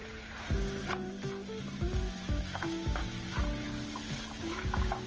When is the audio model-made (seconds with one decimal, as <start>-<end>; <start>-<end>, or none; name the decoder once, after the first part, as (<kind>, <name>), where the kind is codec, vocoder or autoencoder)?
2.4-3.0 (codec, DAC); 4.4-5.1